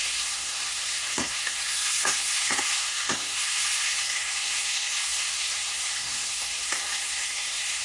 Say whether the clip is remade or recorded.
remade